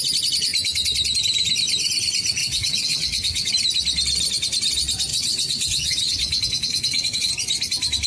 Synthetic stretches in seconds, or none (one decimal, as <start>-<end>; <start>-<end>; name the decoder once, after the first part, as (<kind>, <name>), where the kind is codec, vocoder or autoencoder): 2.4-3.5 (vocoder, WaveNeXt); 5.1-7.3